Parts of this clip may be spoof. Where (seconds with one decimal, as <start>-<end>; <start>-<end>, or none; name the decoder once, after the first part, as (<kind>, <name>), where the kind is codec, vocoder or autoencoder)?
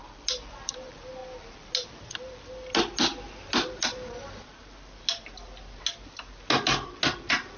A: none